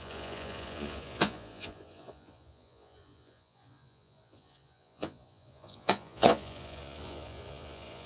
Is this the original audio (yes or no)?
no